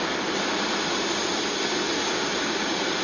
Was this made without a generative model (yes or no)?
yes